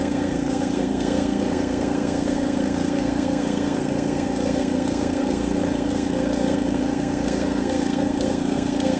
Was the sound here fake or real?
fake